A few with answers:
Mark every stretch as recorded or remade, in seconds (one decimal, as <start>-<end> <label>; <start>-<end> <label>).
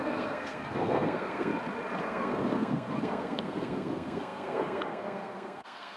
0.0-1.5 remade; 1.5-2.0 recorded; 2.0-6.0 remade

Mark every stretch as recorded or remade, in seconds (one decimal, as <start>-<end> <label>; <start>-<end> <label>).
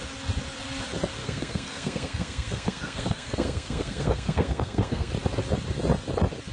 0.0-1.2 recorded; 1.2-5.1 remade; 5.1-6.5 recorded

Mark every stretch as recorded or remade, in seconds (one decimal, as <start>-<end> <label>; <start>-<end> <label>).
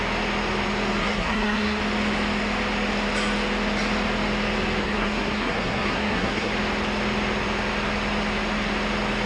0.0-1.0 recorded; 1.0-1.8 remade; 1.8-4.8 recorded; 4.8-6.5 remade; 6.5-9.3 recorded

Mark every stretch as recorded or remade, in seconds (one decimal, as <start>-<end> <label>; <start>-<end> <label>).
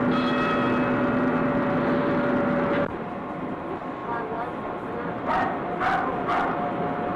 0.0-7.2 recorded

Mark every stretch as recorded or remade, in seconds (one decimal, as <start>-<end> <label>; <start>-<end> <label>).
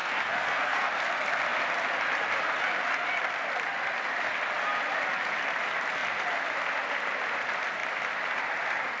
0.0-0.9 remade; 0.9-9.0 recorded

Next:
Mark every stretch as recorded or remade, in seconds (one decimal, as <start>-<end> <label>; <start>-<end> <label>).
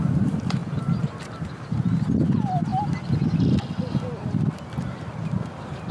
0.0-5.9 recorded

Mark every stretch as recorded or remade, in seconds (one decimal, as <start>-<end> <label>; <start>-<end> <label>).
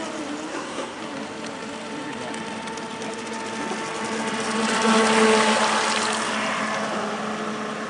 0.0-0.5 recorded; 0.5-1.0 remade; 1.0-7.9 recorded